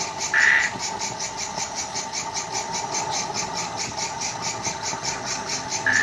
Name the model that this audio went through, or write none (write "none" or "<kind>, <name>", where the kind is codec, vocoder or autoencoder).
none